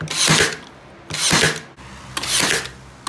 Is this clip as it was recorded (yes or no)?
yes